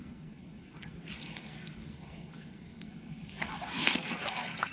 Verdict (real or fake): fake